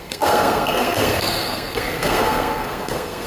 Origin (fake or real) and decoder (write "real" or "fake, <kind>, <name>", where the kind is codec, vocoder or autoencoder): fake, codec, SNAC